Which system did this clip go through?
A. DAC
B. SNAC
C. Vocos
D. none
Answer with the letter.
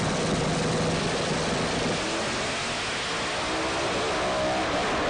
D